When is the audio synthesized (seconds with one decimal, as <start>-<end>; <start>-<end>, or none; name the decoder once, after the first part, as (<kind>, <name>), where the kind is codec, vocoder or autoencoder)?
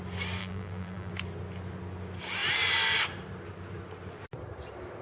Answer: 0.4-1.1 (vocoder, BigVGAN v2)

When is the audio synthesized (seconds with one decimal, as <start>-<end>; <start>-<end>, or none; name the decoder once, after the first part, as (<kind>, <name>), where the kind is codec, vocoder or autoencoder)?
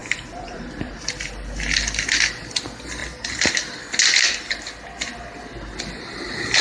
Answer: 0.0-1.2 (vocoder, BigVGAN v2)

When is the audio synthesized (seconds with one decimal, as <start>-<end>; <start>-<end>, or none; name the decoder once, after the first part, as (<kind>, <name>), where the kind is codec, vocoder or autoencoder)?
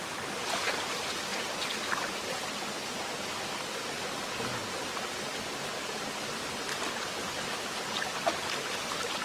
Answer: 1.3-4.1 (vocoder, BigVGAN v2)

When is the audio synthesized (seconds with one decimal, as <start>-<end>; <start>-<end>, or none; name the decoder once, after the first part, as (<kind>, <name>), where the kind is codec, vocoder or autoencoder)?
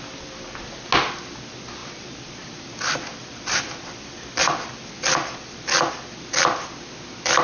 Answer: 1.8-5.9 (vocoder, BigVGAN v2)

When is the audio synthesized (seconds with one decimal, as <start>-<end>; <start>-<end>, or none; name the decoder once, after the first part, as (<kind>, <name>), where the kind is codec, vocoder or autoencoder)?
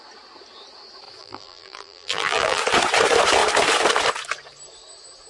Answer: 1.2-2.6 (vocoder, BigVGAN v2)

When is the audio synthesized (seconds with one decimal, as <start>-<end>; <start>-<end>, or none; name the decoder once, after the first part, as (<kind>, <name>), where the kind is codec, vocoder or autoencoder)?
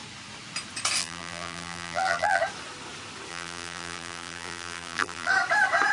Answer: 1.0-2.4 (vocoder, BigVGAN v2); 3.3-5.3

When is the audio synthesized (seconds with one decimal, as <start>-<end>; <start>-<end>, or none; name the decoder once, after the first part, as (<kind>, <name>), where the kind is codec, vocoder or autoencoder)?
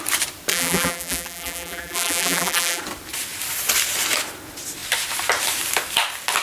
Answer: 0.5-2.8 (vocoder, BigVGAN v2)